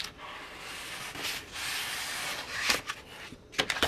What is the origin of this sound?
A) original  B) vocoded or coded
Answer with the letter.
A